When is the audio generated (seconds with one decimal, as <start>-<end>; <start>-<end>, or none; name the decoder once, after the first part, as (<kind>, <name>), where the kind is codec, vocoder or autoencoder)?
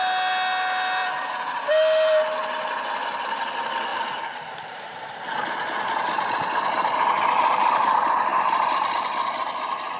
1.0-1.5 (vocoder, BigVGAN v2); 3.9-5.9; 8.3-8.9